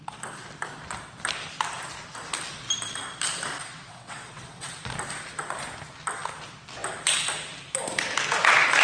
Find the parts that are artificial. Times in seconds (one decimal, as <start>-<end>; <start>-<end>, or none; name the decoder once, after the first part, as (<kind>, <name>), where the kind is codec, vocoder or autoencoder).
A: 3.7-4.8 (vocoder, WaveNeXt)

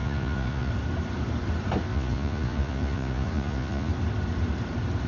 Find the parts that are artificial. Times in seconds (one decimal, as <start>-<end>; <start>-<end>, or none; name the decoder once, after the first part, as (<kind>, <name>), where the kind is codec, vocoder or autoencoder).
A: 0.0-0.7 (vocoder, Vocos); 1.9-3.9

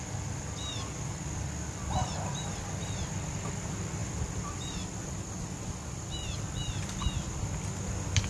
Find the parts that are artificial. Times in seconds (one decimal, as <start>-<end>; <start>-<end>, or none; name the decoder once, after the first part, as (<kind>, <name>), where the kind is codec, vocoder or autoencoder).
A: none

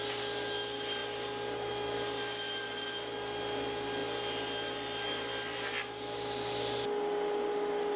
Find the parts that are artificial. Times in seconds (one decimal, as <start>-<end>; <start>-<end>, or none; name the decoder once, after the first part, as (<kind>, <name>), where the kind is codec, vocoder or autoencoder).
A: none

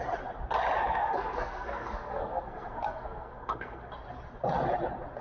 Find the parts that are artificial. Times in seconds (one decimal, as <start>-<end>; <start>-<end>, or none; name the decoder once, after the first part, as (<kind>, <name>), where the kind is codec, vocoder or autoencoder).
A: 0.8-3.9 (codec, SNAC)

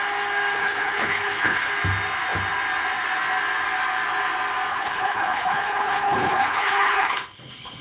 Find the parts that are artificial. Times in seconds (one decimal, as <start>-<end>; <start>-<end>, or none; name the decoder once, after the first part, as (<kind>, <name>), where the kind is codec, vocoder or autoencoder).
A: 0.6-1.7 (codec, HILCodec); 4.7-7.8

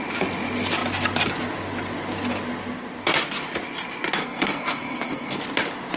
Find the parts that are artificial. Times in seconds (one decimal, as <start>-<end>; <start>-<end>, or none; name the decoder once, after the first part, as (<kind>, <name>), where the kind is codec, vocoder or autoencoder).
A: 4.2-5.4 (codec, SNAC)

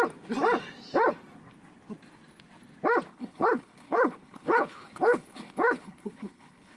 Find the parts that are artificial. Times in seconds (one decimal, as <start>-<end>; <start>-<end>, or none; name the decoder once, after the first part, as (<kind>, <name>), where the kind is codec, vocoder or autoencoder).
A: 3.1-6.8 (codec, HILCodec)